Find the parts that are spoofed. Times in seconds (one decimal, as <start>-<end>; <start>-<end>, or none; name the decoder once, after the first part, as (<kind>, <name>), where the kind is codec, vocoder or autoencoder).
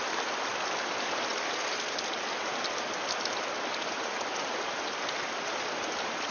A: none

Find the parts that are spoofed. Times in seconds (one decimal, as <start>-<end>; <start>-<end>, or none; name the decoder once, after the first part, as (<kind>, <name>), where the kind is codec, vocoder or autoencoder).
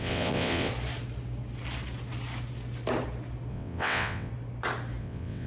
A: 0.0-0.7 (vocoder, WaveNeXt); 3.5-4.3; 5.0-5.5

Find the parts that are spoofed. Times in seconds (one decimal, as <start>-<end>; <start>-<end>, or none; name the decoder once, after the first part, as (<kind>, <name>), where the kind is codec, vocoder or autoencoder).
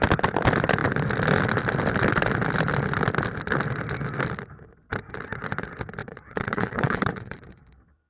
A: 6.0-7.6 (vocoder, WaveNeXt)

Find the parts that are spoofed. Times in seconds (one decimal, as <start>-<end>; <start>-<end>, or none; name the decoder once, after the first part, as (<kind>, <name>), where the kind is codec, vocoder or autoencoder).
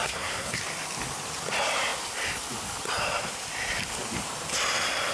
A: 0.0-0.6 (codec, SNAC)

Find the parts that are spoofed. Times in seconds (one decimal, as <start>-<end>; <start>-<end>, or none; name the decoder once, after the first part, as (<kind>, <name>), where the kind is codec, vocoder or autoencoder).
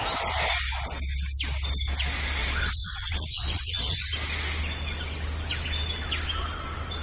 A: 2.4-4.1 (vocoder, Vocos)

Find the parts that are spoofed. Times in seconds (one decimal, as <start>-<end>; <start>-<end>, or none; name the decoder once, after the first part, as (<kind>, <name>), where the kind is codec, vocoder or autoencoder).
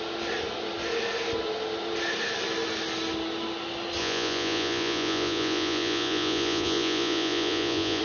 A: 4.0-8.0 (vocoder, Vocos)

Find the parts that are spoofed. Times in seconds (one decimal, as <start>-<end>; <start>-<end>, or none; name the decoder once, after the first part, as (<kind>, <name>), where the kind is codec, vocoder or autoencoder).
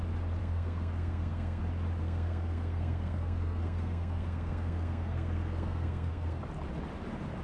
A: 0.4-1.6 (codec, SNAC); 2.0-6.4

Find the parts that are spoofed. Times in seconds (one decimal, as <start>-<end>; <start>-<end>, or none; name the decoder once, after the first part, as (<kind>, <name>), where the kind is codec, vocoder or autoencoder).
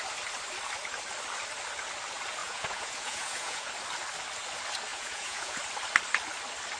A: 2.4-3.7 (vocoder, Vocos); 4.9-5.6